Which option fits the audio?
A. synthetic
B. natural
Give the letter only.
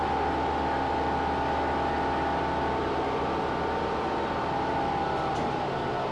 B